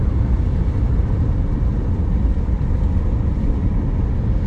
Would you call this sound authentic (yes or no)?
no